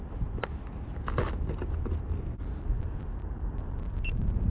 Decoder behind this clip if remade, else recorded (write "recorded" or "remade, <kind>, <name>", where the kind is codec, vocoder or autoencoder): recorded